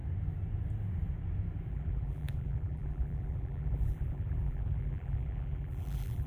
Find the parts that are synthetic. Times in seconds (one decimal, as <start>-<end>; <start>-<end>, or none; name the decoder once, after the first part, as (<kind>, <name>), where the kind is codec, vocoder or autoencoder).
1.7-6.3 (vocoder, BigVGAN v2)